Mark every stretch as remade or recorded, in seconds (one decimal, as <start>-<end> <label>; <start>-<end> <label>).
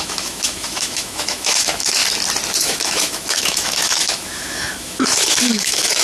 0.0-2.0 remade; 2.0-2.6 recorded; 2.6-6.0 remade